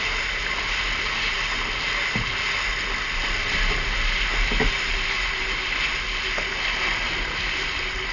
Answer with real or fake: real